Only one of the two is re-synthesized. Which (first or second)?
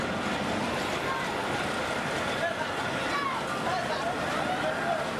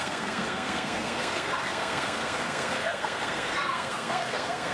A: second